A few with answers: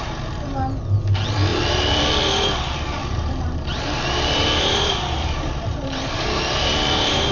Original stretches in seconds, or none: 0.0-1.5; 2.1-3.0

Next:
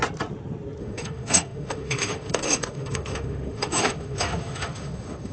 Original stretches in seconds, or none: 0.0-0.8

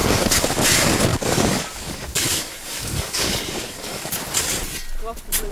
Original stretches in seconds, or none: 0.7-1.1; 4.1-5.5

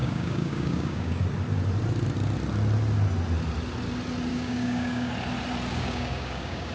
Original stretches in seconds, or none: 1.2-4.3; 5.1-5.7

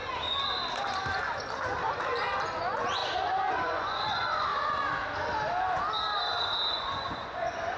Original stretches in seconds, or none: 0.0-2.6; 3.0-3.5; 4.5-6.7

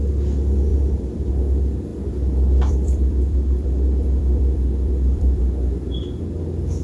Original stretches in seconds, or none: 0.0-0.7; 1.3-1.9; 5.4-6.8

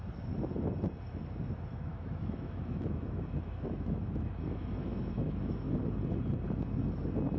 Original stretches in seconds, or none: 0.0-1.7; 5.8-7.4